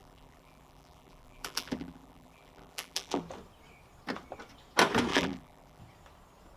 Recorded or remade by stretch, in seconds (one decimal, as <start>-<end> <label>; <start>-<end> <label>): 0.0-3.2 remade; 3.2-5.1 recorded; 5.1-5.8 remade; 5.8-6.6 recorded